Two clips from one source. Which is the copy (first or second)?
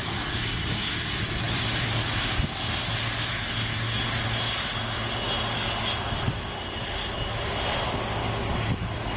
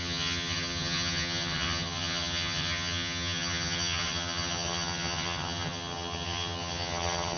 second